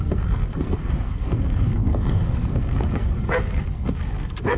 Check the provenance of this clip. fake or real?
fake